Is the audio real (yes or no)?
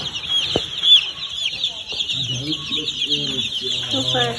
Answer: yes